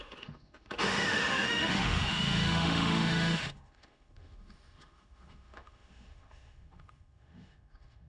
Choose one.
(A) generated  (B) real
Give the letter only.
A